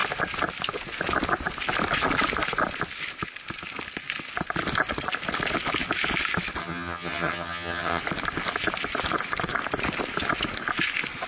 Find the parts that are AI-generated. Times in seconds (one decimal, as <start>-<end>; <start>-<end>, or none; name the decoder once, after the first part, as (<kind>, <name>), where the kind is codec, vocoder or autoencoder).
6.6-8.0 (vocoder, HiFi-GAN)